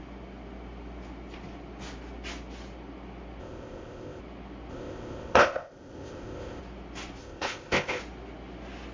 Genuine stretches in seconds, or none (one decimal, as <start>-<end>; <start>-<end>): 0.0-3.4; 4.2-4.7; 6.6-7.2; 8.0-8.9